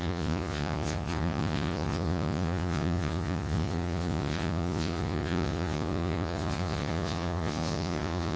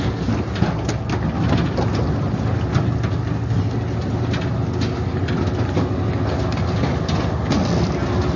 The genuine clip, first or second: second